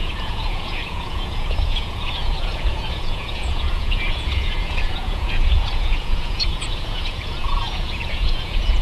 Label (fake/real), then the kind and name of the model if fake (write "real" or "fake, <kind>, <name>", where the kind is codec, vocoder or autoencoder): fake, vocoder, Vocos